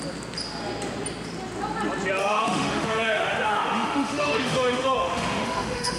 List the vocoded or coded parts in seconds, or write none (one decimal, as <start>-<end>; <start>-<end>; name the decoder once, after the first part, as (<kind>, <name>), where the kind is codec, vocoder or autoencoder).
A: 2.2-6.0 (autoencoder, DAC-VAE)